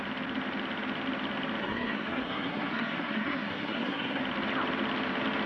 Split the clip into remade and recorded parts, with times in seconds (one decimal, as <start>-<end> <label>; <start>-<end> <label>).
0.0-1.6 recorded; 1.6-4.2 remade; 4.2-5.5 recorded

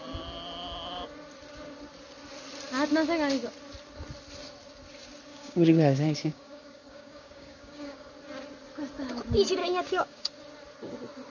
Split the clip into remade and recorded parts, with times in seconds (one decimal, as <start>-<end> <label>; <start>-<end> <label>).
0.0-5.3 recorded; 5.3-8.1 remade; 8.1-9.6 recorded; 9.6-10.3 remade; 10.3-11.3 recorded

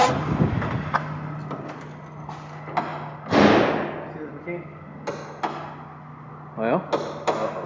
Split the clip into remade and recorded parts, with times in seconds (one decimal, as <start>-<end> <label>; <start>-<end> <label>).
0.0-7.7 recorded

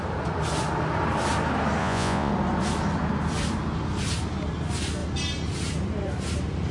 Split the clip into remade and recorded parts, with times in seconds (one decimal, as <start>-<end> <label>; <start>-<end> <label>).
0.0-1.8 recorded; 1.8-2.3 remade; 2.3-6.7 recorded

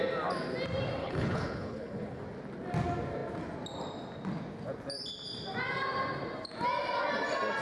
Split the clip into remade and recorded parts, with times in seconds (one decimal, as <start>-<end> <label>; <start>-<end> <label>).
0.0-1.0 recorded; 1.0-2.2 remade; 2.2-7.6 recorded

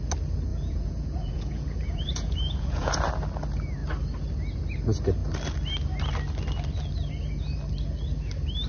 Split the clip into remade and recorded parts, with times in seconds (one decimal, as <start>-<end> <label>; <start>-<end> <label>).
0.0-0.5 recorded; 0.5-2.9 remade; 2.9-8.7 recorded